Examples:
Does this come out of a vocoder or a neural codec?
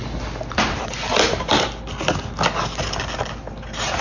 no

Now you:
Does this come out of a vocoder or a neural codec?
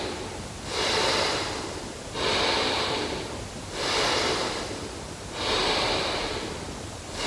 no